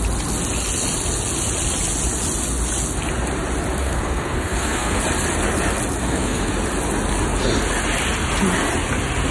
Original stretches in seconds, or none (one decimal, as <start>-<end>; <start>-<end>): 0.0-3.8; 5.0-6.0; 6.5-9.3